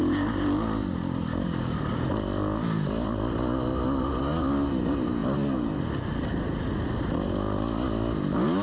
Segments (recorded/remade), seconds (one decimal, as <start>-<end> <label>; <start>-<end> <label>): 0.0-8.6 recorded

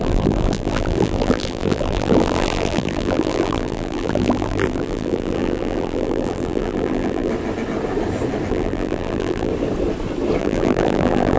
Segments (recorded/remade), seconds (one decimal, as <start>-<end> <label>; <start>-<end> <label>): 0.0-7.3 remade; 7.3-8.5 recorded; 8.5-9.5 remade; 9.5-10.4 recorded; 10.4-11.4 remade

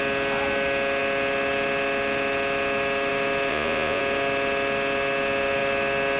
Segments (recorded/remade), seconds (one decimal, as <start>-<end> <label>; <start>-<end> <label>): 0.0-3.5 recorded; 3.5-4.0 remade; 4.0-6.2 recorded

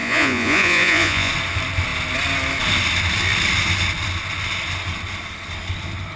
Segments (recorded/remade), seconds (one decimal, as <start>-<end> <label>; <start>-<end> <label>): 0.0-1.3 remade; 1.3-6.2 recorded

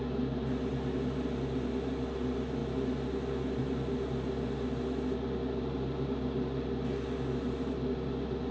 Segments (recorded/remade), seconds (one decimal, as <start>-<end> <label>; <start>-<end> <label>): 0.0-8.5 recorded

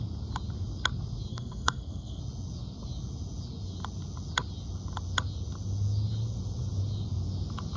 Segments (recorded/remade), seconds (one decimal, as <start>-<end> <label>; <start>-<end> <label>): 0.0-1.3 recorded; 1.3-2.2 remade; 2.2-7.8 recorded

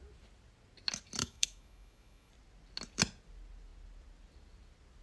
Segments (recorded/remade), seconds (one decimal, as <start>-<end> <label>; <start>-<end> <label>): 0.0-1.2 recorded; 1.2-2.3 remade; 2.3-5.0 recorded

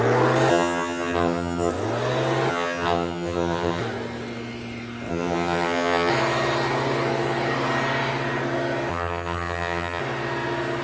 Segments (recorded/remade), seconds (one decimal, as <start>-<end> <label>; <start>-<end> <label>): 0.0-0.5 recorded; 0.5-1.7 remade; 1.7-2.5 recorded; 2.5-3.8 remade; 3.8-5.1 recorded; 5.1-6.1 remade; 6.1-8.9 recorded; 8.9-10.0 remade; 10.0-10.8 recorded